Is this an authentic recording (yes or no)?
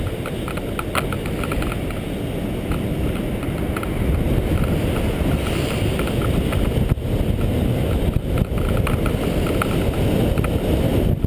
yes